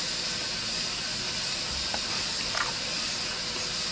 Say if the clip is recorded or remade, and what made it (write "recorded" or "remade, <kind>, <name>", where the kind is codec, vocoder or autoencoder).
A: recorded